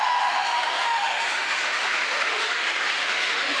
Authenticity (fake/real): fake